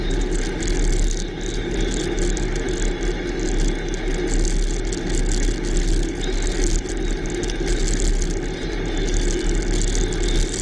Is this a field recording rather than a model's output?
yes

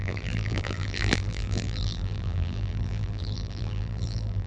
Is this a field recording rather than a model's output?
no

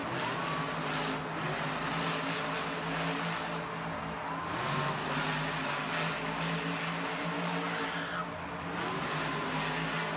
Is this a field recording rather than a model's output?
yes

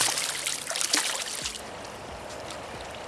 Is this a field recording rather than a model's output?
yes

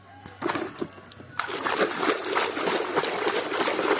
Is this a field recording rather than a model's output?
yes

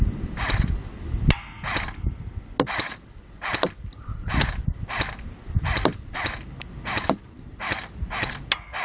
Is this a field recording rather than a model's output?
yes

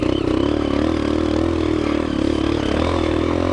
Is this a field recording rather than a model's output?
yes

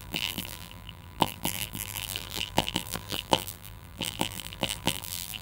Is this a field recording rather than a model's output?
no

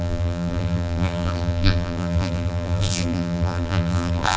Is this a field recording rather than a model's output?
no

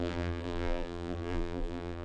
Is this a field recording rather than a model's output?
no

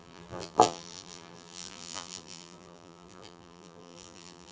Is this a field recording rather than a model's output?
no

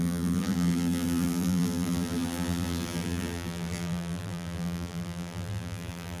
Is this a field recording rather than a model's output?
no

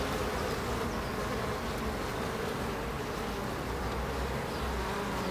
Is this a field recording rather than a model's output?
yes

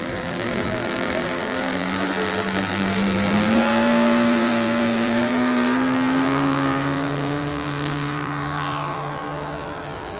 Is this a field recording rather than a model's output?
no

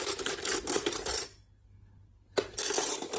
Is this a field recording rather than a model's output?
yes